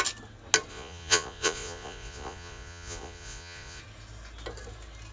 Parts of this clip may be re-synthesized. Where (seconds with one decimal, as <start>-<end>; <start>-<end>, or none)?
0.7-3.8